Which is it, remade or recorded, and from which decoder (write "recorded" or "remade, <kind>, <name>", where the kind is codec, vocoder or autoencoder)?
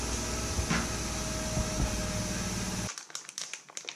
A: recorded